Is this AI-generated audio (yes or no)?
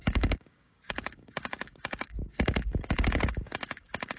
yes